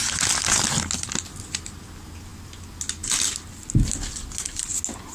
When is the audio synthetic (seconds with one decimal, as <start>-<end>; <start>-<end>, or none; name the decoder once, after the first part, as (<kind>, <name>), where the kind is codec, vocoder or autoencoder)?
none